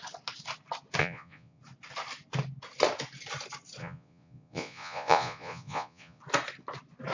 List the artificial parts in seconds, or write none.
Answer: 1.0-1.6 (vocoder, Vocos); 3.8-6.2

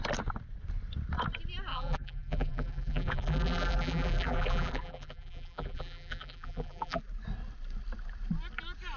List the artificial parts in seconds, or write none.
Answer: 1.7-7.0 (vocoder, BigVGAN v2)

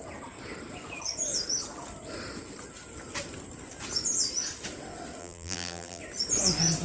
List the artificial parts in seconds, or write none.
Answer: 5.2-6.0 (vocoder, BigVGAN v2)

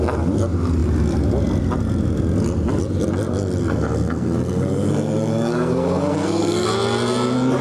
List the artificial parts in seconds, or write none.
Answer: 3.6-6.7 (codec, SNAC)

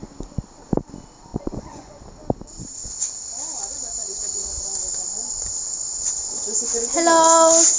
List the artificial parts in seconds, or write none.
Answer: 1.3-1.9 (vocoder, Vocos); 4.0-4.6